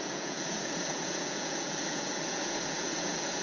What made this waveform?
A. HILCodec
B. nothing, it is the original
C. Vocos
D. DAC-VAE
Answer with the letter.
C